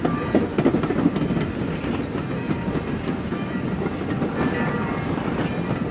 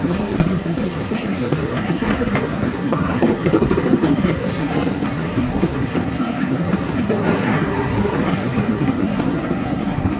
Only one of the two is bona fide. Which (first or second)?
first